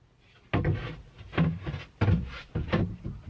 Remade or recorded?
recorded